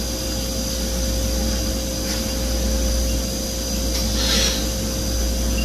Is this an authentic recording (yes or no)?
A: yes